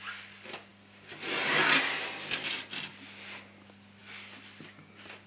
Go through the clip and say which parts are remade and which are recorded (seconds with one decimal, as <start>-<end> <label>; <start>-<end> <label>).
0.0-5.3 recorded